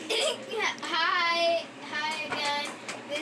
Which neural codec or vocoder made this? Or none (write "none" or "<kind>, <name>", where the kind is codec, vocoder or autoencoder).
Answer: vocoder, BigVGAN v2